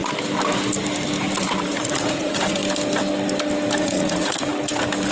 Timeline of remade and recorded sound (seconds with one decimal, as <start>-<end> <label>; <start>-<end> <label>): 0.0-1.4 recorded; 1.4-2.6 remade; 2.6-3.8 recorded; 3.8-4.5 remade; 4.5-5.1 recorded